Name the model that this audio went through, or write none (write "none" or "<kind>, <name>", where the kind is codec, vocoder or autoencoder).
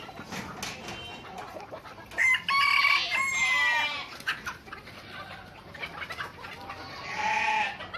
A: none